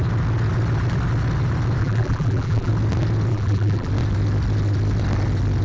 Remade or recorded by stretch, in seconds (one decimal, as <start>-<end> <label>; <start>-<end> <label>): 0.0-1.8 recorded; 1.8-2.7 remade; 2.7-3.3 recorded; 3.3-3.9 remade; 3.9-5.6 recorded